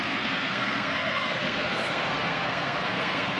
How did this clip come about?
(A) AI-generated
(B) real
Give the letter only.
A